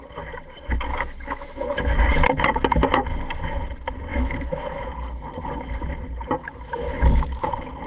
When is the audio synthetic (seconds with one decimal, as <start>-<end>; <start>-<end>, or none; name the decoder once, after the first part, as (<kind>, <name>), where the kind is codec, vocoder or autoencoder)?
0.9-2.0 (autoencoder, DAC-VAE); 4.1-4.9; 6.4-7.5